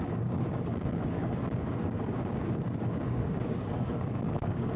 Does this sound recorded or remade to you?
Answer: remade